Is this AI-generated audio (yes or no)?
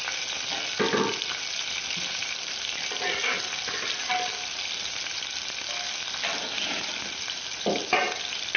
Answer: no